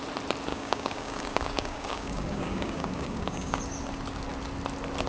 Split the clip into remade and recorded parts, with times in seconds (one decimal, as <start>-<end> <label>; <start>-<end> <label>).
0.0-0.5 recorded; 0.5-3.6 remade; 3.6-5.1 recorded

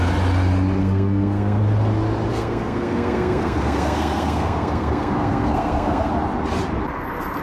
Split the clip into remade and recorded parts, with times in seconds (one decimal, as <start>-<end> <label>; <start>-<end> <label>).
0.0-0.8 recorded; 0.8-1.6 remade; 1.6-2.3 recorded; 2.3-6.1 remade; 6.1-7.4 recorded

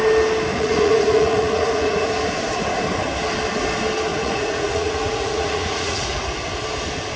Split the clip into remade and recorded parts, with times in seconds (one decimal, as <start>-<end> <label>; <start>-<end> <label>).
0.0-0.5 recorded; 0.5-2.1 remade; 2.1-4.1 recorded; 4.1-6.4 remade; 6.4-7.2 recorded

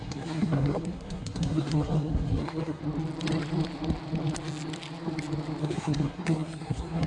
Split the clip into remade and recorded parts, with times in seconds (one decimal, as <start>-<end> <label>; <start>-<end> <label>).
0.0-2.8 remade; 2.8-5.6 recorded; 5.6-7.1 remade

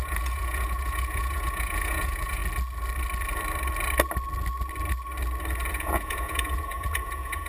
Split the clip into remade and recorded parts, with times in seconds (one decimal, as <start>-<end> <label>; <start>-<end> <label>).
0.0-2.4 remade; 2.4-5.7 recorded; 5.7-7.5 remade

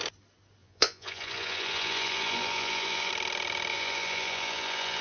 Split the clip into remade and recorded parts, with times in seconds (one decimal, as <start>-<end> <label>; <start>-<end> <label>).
0.0-0.6 recorded; 0.6-3.1 remade; 3.1-3.7 recorded; 3.7-5.0 remade

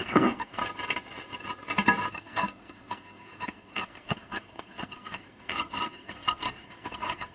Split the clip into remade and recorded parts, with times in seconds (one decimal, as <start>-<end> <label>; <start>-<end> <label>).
0.0-0.6 remade; 0.6-2.1 recorded; 2.1-7.3 remade

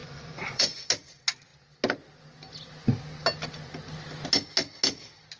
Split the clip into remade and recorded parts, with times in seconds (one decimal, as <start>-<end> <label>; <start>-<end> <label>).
0.0-0.9 remade; 0.9-5.4 recorded